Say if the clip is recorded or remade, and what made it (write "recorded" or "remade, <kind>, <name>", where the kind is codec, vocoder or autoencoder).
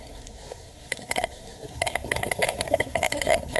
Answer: remade, codec, SNAC